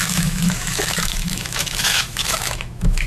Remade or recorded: remade